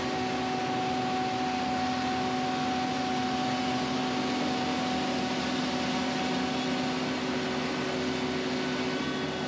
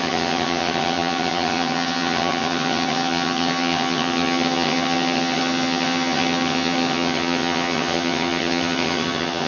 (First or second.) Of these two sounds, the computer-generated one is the second